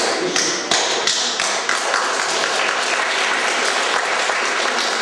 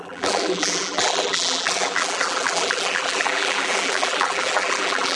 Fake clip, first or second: second